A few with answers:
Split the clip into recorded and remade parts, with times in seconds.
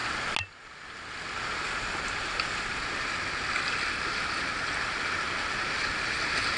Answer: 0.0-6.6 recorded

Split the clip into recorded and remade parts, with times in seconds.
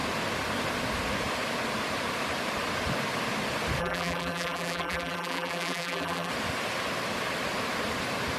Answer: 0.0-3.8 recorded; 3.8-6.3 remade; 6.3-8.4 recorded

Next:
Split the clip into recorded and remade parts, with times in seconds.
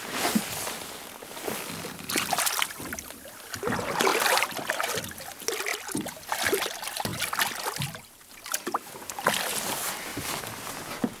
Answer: 0.0-5.7 recorded; 5.7-6.5 remade; 6.5-10.1 recorded; 10.1-10.7 remade; 10.7-11.2 recorded